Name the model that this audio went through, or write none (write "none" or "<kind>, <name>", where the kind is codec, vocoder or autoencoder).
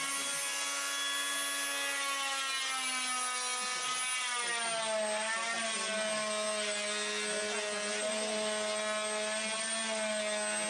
none